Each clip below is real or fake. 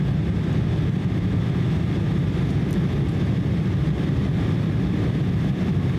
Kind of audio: real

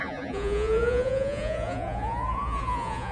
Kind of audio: fake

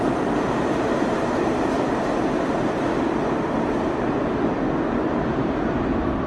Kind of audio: real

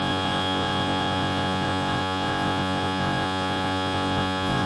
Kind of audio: fake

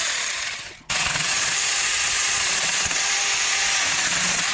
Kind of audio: fake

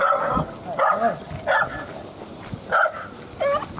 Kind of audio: real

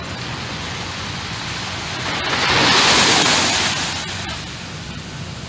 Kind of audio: fake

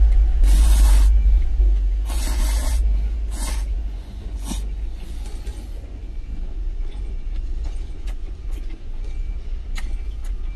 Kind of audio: fake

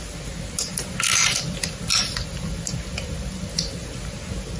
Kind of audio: real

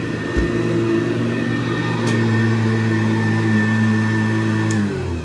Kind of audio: real